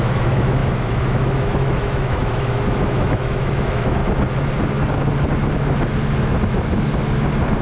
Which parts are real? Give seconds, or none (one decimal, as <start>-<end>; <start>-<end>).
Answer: 4.0-7.6